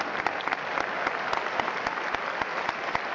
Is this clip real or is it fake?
real